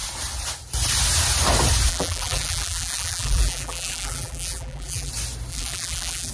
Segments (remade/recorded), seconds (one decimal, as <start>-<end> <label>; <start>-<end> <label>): 0.0-1.9 recorded; 1.9-5.1 remade; 5.1-5.5 recorded; 5.5-6.3 remade